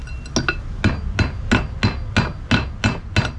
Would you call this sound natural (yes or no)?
yes